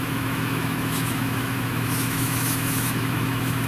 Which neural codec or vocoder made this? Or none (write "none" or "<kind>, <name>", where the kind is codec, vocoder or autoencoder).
autoencoder, DAC-VAE